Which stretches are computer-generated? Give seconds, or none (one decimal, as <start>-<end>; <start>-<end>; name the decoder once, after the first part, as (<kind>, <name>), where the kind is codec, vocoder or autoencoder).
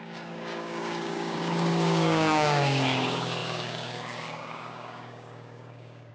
0.0-6.1 (codec, DAC)